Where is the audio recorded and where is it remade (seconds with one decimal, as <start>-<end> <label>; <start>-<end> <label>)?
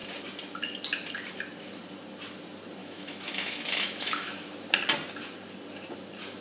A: 0.0-2.8 recorded; 2.8-4.5 remade; 4.5-6.4 recorded